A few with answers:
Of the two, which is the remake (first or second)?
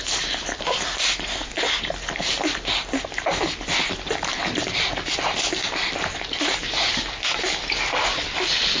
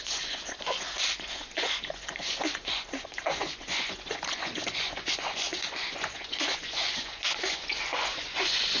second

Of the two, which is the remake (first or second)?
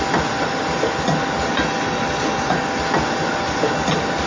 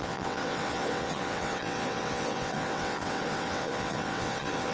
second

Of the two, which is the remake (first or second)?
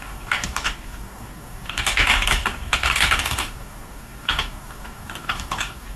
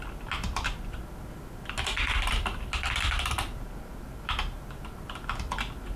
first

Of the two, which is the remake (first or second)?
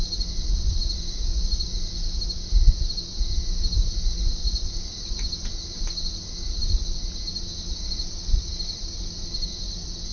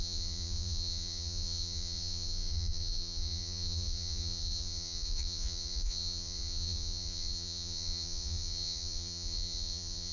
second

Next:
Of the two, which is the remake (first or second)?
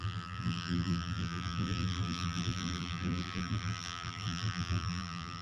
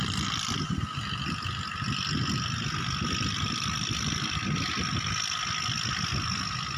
first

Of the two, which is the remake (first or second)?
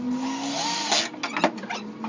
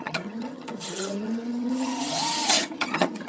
second